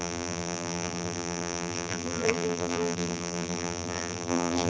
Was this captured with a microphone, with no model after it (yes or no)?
no